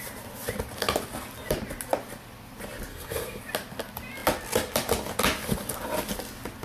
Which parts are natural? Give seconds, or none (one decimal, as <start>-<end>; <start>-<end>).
0.0-2.9; 3.4-6.6